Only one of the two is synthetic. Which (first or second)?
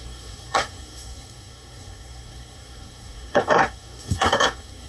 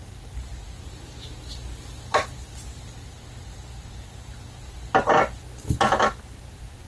first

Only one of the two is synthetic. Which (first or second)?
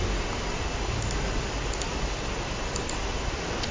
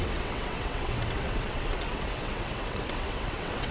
second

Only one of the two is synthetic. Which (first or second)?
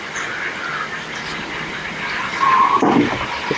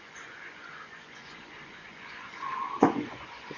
second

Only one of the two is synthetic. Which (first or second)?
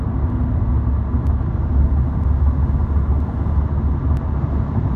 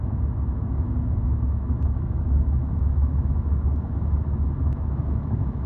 second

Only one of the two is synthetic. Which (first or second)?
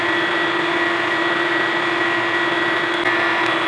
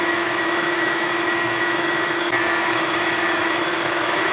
second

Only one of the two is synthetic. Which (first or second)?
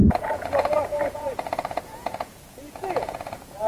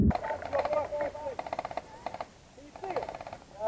first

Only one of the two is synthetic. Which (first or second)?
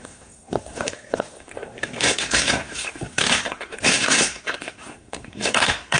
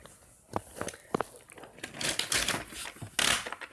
first